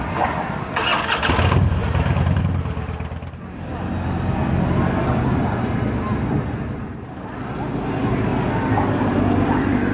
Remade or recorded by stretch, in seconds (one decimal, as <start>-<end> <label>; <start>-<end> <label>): 0.0-1.8 recorded; 1.8-2.4 remade; 2.4-9.9 recorded